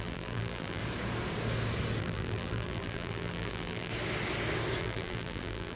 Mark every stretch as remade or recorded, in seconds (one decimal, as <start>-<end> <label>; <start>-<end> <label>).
0.0-0.8 remade; 0.8-2.0 recorded; 2.0-3.9 remade; 3.9-4.8 recorded; 4.8-5.8 remade